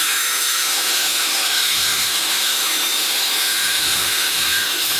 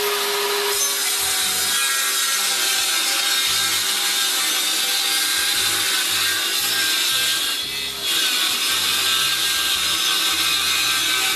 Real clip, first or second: second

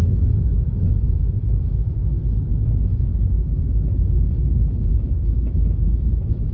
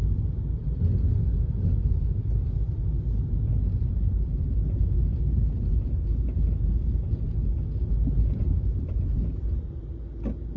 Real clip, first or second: second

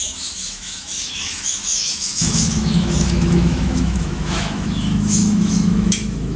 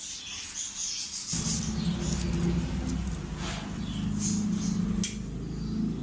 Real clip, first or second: second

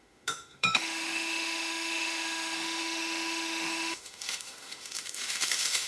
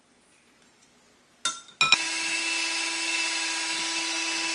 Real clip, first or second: second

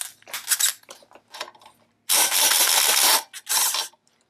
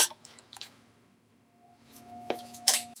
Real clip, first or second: first